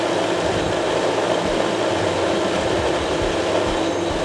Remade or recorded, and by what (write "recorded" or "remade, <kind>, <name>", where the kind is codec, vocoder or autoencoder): remade, vocoder, BigVGAN v2